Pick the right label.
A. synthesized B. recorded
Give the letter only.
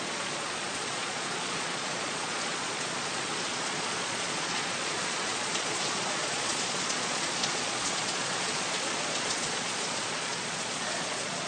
A